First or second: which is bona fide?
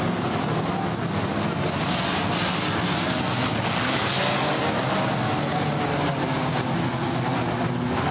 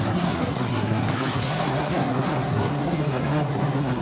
first